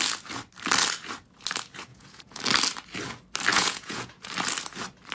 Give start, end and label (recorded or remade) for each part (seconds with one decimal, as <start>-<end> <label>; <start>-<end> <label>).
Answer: 0.0-1.9 recorded; 1.9-2.4 remade; 2.4-3.5 recorded; 3.5-4.3 remade; 4.3-5.1 recorded